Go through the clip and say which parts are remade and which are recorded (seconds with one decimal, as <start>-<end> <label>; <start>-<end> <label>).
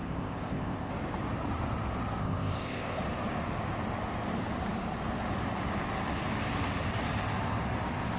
0.0-0.9 remade; 0.9-2.2 recorded; 2.2-3.0 remade; 3.0-8.2 recorded